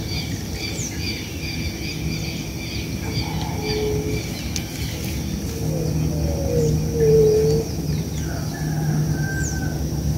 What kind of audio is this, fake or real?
real